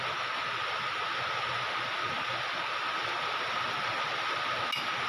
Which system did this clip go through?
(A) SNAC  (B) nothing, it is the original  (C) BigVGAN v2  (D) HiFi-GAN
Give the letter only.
B